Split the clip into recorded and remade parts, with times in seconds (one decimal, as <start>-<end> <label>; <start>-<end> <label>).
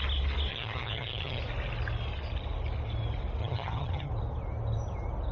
0.0-0.5 recorded; 0.5-1.4 remade; 1.4-3.4 recorded; 3.4-4.1 remade; 4.1-5.3 recorded